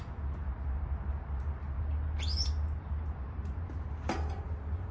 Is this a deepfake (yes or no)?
no